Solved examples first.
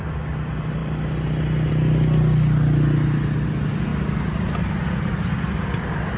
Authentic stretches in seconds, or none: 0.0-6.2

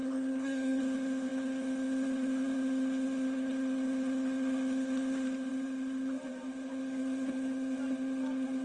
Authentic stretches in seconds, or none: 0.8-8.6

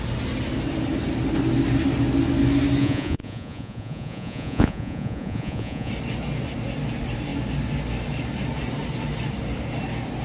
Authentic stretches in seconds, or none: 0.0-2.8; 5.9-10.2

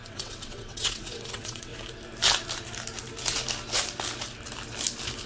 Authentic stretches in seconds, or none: 1.7-5.3

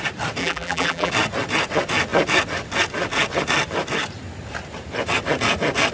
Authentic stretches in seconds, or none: 0.0-0.4; 1.1-5.9

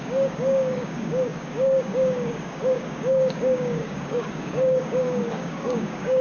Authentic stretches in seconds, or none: none